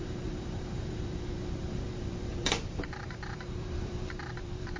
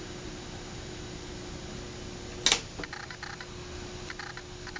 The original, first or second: second